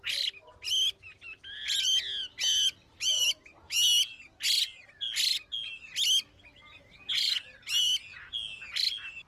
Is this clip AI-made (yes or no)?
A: no